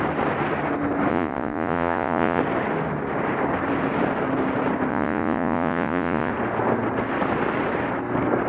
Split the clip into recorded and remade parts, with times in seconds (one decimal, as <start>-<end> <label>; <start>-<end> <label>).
0.0-1.1 recorded; 1.1-2.4 remade; 2.4-4.9 recorded; 4.9-6.3 remade; 6.3-8.5 recorded